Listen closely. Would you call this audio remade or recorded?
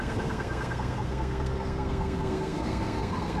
remade